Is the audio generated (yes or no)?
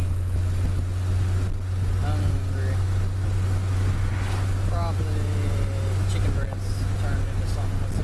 no